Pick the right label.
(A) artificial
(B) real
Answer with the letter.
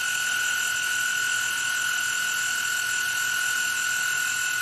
B